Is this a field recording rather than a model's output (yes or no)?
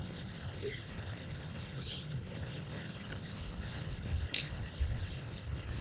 no